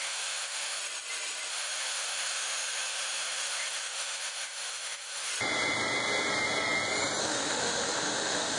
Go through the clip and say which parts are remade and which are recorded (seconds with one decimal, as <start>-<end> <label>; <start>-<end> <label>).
0.0-0.8 remade; 0.8-1.5 recorded; 1.5-5.3 remade; 5.3-7.2 recorded; 7.2-8.6 remade